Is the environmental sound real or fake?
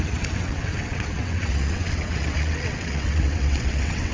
fake